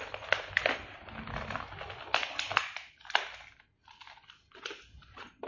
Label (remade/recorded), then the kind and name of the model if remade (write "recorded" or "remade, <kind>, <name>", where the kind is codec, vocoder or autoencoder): recorded